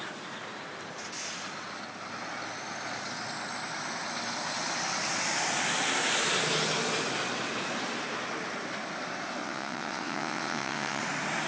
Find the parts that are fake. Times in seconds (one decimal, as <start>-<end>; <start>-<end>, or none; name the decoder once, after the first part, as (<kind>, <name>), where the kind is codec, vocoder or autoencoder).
9.4-11.0 (vocoder, WaveNeXt)